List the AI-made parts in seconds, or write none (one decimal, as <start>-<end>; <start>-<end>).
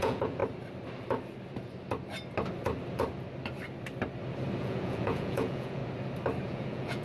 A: 0.0-0.4; 4.6-5.8; 6.4-7.0